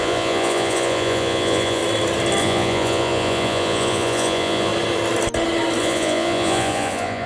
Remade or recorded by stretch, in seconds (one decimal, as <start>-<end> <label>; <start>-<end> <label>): 0.0-1.8 remade; 1.8-2.4 recorded; 2.4-4.7 remade; 4.7-5.8 recorded; 5.8-7.3 remade